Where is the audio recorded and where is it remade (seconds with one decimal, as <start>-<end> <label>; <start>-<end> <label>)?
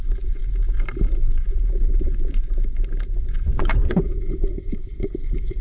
0.0-0.4 remade; 0.4-1.2 recorded; 1.2-2.7 remade; 2.7-3.2 recorded; 3.2-5.6 remade